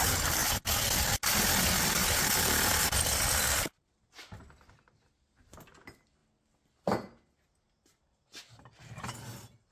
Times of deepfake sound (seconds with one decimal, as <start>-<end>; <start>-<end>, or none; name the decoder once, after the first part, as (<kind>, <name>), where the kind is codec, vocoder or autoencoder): none